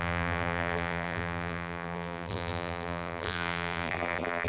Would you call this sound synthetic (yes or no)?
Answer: yes